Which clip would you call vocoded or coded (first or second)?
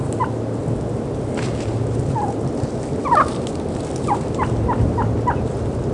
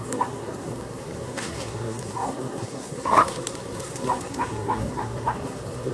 second